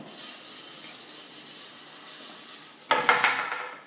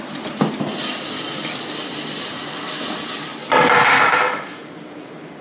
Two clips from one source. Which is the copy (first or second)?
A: second